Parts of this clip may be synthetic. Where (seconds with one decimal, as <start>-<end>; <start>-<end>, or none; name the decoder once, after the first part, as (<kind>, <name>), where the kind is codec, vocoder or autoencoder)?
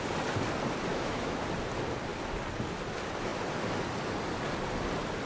0.9-1.4 (autoencoder, DAC-VAE)